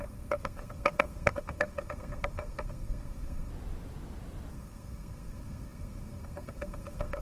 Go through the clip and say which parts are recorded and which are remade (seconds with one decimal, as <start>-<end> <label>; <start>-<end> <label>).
0.0-3.5 remade; 3.5-4.5 recorded; 4.5-7.2 remade